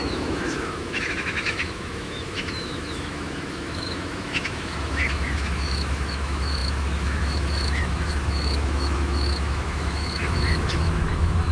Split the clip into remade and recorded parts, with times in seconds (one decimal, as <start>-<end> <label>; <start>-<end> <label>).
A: 0.0-11.5 remade